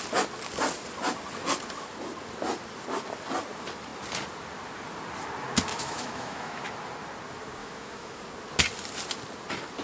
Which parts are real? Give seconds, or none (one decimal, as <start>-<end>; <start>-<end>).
0.0-5.7; 6.7-7.6; 8.2-9.8